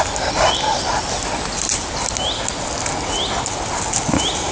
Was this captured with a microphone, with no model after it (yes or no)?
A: yes